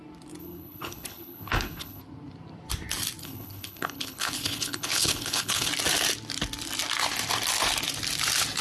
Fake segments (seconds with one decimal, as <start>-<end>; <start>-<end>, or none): 0.4-2.0; 3.2-5.7